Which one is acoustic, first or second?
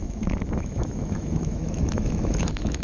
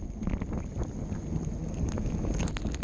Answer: second